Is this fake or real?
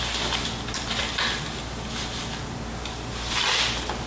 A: real